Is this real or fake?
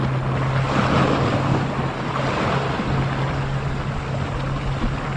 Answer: real